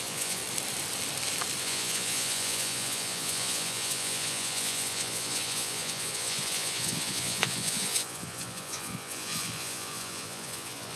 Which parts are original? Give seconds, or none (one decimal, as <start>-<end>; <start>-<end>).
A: 0.4-1.6